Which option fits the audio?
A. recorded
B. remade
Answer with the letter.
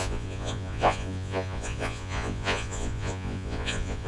B